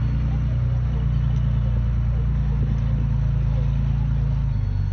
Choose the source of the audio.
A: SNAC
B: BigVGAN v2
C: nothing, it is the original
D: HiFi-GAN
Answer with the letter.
C